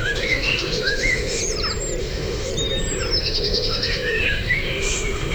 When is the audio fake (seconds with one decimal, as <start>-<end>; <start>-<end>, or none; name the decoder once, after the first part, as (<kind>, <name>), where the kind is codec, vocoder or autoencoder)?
0.0-1.4 (autoencoder, DAC-VAE); 2.0-2.5; 3.2-5.3